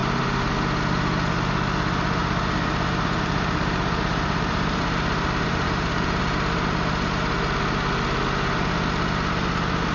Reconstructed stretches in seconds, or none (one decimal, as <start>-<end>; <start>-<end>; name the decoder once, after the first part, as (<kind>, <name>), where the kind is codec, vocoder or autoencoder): 0.0-0.5 (vocoder, BigVGAN v2); 2.2-6.2